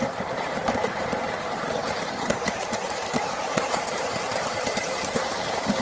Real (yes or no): no